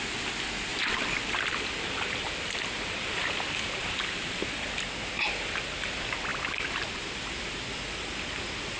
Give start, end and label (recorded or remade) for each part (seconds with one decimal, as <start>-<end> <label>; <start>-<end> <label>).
0.0-0.7 recorded; 0.7-4.4 remade; 4.4-6.3 recorded; 6.3-7.0 remade; 7.0-8.8 recorded